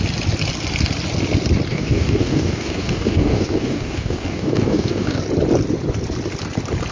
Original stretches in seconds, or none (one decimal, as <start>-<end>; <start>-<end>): 0.0-1.7; 5.2-6.9

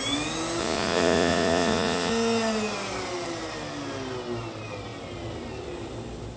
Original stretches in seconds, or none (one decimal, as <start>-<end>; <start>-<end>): 0.0-0.6; 2.1-6.4

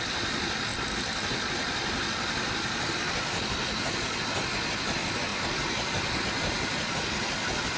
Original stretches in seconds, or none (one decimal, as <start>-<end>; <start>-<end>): 0.0-0.7; 4.2-5.3; 6.2-7.8

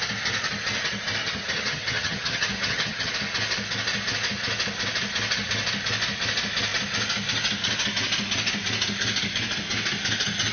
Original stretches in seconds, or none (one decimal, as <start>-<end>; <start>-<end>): 0.0-1.2; 3.1-10.5

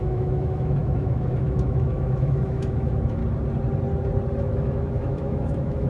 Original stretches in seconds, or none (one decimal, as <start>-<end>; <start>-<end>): 3.2-4.4

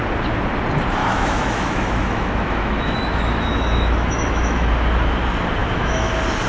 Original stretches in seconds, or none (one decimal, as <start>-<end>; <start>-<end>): 0.0-1.0; 4.7-5.6; 6.1-6.5

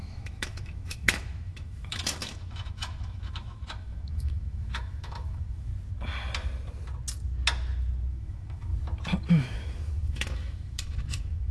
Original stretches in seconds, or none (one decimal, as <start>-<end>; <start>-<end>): 5.7-8.1; 8.7-9.3

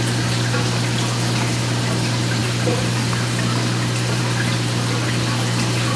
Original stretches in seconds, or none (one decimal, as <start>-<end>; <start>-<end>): 0.0-6.0